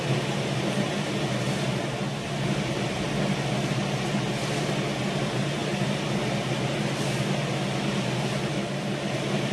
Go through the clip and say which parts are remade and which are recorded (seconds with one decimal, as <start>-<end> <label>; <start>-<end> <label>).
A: 0.0-9.5 recorded